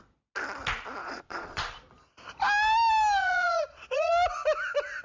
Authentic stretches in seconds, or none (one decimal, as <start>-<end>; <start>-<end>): 0.0-1.0; 1.8-3.2; 4.1-5.0